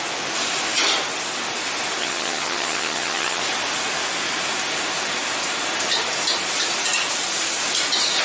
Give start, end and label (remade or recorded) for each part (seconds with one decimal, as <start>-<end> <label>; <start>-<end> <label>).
0.0-2.0 recorded; 2.0-3.4 remade; 3.4-8.2 recorded